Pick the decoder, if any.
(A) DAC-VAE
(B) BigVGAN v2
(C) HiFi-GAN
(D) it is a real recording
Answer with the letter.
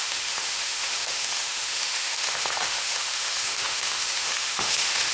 A